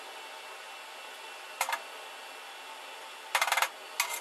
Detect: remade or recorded recorded